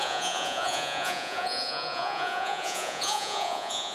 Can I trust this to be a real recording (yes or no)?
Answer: no